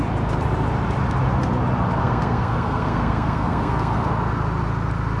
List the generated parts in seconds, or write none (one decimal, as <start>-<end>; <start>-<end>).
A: 2.0-4.1